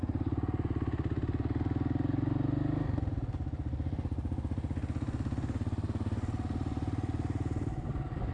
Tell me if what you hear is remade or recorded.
recorded